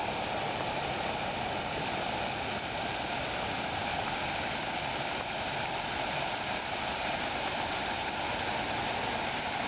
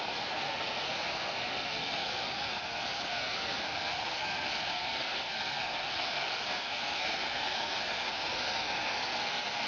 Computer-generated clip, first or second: second